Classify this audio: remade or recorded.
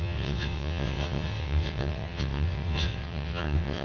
remade